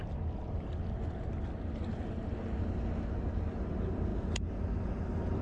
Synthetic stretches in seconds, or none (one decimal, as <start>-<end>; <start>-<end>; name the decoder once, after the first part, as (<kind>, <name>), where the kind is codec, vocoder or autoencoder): none